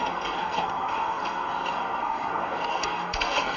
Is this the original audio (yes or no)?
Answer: no